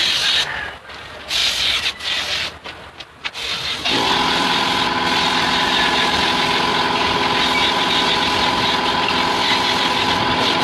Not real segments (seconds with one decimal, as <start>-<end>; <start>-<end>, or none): 1.4-1.9